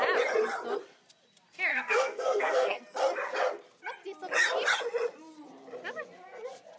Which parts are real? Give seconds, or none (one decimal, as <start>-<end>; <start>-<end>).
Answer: 0.0-1.7; 2.8-6.8